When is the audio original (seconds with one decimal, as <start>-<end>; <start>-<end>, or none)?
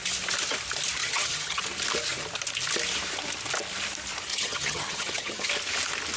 0.0-1.0; 1.6-4.3; 5.5-6.2